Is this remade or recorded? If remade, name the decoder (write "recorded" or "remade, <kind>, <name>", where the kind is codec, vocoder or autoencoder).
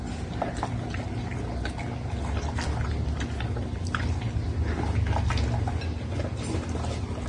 recorded